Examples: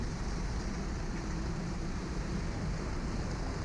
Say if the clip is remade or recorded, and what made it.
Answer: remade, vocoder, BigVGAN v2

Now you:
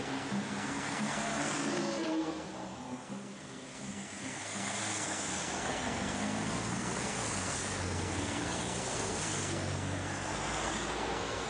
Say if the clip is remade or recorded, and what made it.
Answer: remade, codec, SNAC